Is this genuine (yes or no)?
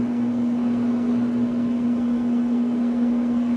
no